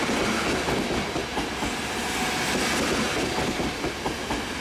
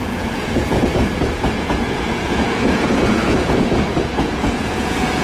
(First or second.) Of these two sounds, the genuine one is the first